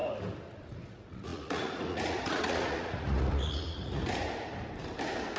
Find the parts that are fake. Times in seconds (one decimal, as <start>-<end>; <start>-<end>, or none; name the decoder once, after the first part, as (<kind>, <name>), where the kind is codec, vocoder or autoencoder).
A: 0.5-4.0 (vocoder, Vocos)